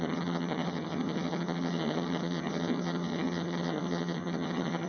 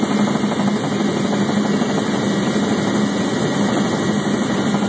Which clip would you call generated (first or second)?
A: first